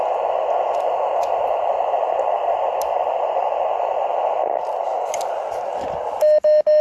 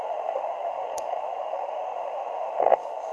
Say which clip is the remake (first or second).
second